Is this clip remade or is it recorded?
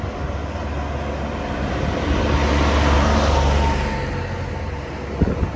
recorded